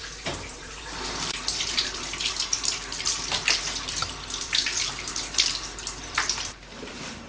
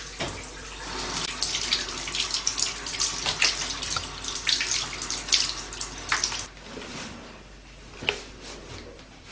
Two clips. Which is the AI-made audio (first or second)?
first